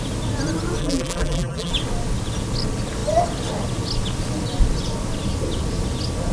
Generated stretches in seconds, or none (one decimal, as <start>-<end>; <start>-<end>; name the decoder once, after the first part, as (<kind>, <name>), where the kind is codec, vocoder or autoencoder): 0.8-1.7 (vocoder, BigVGAN v2)